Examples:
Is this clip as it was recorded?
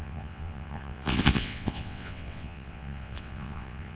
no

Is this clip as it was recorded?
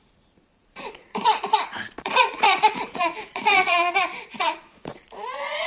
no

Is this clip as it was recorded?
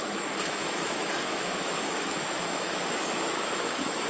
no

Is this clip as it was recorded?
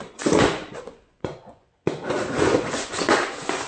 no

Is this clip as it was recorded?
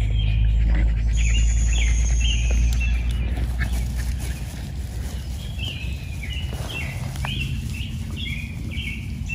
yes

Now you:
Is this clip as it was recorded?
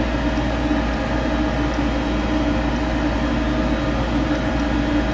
yes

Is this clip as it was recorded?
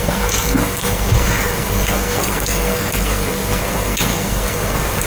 no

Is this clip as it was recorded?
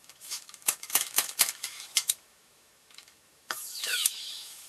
no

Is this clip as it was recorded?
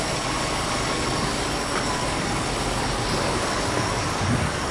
no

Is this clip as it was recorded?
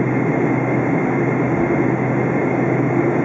yes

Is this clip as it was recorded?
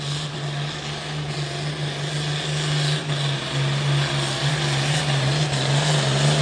yes